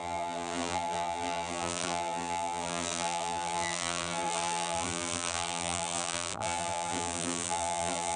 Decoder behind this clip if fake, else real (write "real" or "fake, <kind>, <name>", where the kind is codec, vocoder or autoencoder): fake, vocoder, BigVGAN v2